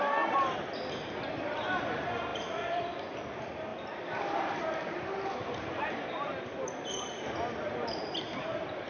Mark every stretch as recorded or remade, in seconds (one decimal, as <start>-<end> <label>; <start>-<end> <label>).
0.0-2.3 recorded; 2.3-3.3 remade; 3.3-3.7 recorded; 3.7-8.9 remade